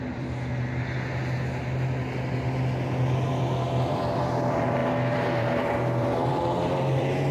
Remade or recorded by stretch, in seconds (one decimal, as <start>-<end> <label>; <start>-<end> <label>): 0.0-0.5 remade; 0.5-3.3 recorded; 3.3-7.3 remade